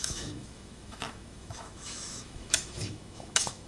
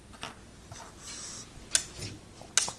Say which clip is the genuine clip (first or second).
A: second